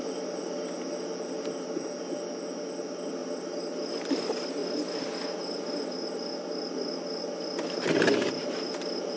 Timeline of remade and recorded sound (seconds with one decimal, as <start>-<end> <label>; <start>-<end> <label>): 0.0-9.2 recorded